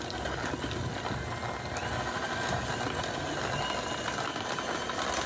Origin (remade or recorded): recorded